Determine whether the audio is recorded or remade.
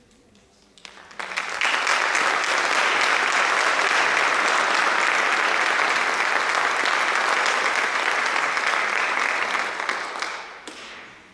recorded